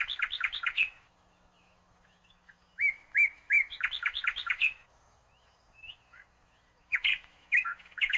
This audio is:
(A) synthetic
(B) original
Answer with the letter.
A